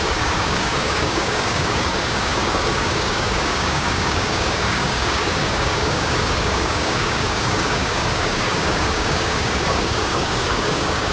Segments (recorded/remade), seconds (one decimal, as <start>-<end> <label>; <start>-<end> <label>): 0.0-11.1 remade